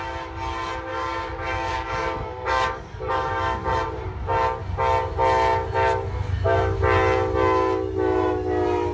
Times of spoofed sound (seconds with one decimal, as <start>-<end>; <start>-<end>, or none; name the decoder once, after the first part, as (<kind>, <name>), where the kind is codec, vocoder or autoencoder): 0.9-3.8 (codec, DAC)